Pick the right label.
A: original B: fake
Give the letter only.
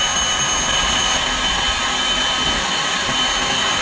A